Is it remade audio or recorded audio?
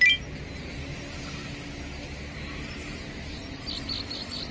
recorded